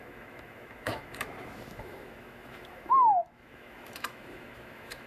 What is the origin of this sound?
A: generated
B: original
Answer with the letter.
A